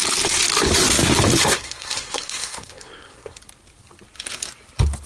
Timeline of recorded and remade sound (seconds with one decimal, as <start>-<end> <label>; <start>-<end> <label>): 0.0-1.4 recorded; 1.4-3.4 remade; 3.4-5.1 recorded